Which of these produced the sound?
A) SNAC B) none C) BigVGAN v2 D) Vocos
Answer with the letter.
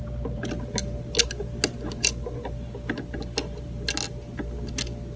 B